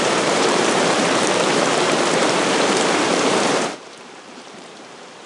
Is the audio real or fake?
fake